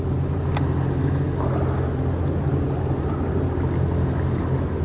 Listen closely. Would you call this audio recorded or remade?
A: recorded